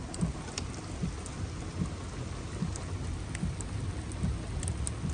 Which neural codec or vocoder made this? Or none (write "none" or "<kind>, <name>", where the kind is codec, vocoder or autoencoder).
none